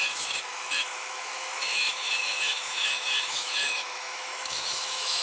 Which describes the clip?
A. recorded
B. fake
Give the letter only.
B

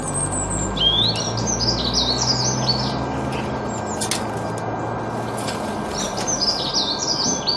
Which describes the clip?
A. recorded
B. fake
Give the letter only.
A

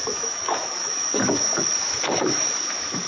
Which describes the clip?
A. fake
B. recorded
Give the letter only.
A